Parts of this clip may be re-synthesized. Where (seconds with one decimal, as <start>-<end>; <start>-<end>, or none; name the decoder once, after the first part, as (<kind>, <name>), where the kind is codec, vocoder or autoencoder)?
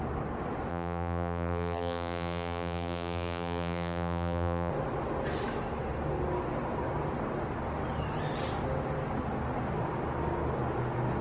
0.7-4.7 (vocoder, BigVGAN v2)